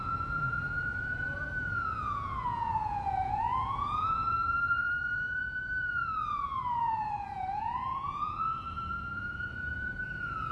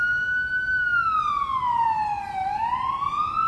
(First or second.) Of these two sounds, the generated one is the first